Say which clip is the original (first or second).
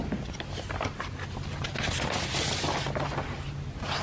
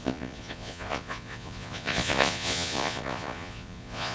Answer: first